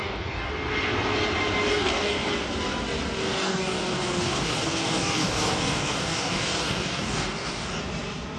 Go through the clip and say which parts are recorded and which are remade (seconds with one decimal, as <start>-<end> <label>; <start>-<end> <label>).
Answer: 0.0-0.5 remade; 0.5-1.7 recorded; 1.7-2.3 remade; 2.3-3.2 recorded; 3.2-7.8 remade; 7.8-8.4 recorded

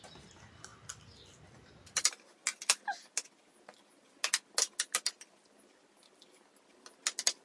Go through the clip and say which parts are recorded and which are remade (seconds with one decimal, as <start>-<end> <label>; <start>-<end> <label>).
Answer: 0.0-7.4 recorded

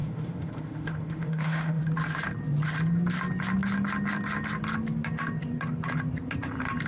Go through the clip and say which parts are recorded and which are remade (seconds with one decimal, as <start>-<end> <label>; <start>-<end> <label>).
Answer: 0.0-1.8 remade; 1.8-6.9 recorded